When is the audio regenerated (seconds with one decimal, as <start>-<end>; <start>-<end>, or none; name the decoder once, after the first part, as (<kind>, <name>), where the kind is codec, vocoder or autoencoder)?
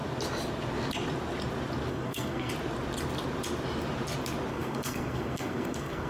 1.9-2.5 (codec, SNAC); 4.5-6.1